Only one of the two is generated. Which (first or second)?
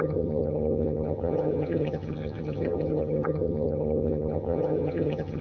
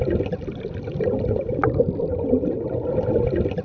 first